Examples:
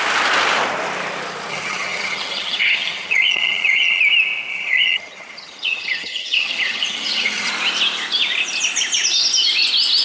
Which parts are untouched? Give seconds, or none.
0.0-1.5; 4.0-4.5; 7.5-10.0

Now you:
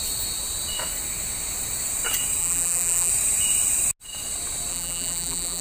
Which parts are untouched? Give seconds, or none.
0.0-2.4; 3.1-4.7

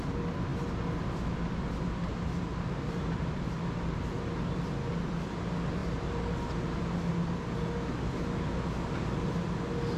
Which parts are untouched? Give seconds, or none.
0.0-2.1; 3.6-10.0

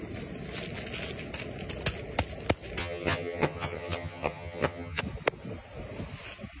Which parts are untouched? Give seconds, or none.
0.0-2.8; 5.0-6.6

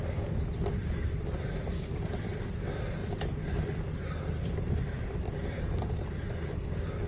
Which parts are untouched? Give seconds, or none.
0.0-1.7; 2.4-7.1

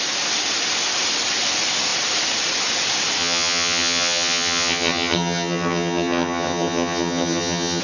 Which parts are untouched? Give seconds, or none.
0.0-3.2